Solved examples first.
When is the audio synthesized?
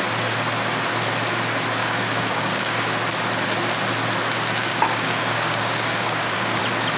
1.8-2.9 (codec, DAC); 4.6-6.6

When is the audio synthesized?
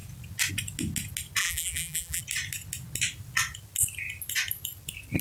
1.4-2.2 (vocoder, BigVGAN v2)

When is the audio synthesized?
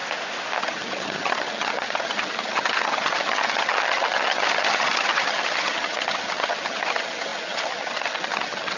0.6-8.8 (vocoder, HiFi-GAN)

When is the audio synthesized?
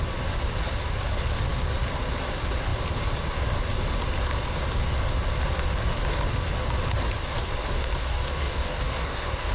8.0-9.5 (codec, DAC)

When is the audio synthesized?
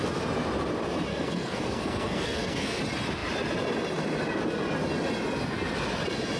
1.1-2.8 (codec, SNAC)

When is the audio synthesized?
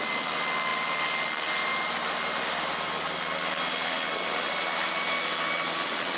none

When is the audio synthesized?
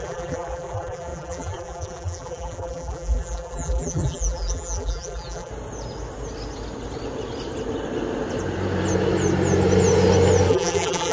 0.0-5.5 (vocoder, BigVGAN v2); 10.5-11.1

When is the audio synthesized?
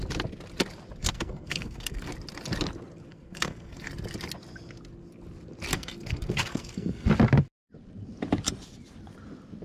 1.0-2.1 (codec, SNAC); 3.1-3.9; 5.7-7.1